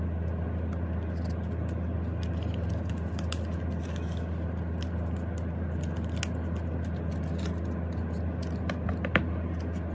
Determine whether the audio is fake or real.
real